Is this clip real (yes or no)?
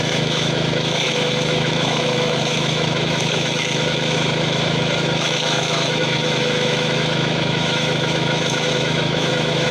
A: no